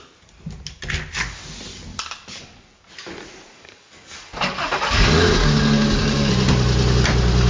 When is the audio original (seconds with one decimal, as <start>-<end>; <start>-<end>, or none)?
0.0-1.9; 2.9-3.5; 6.3-7.5